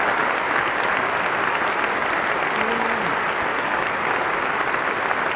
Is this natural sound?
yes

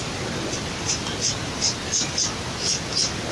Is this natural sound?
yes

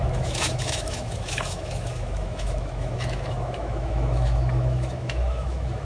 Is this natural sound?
no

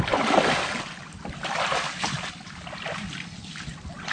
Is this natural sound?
yes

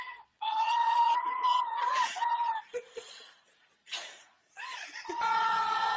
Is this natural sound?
no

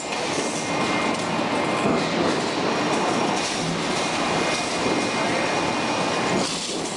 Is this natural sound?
yes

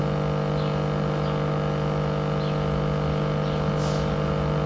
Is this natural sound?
yes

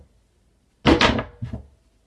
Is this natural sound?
yes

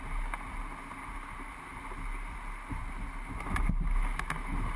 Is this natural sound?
yes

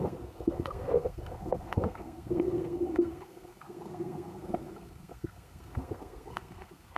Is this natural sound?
no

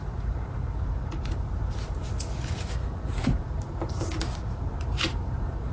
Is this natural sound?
no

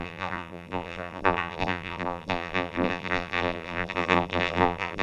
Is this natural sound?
no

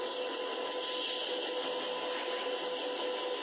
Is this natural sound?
yes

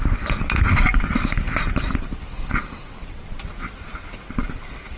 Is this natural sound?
yes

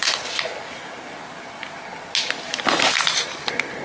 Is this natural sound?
yes